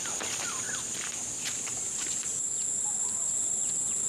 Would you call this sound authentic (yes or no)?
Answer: yes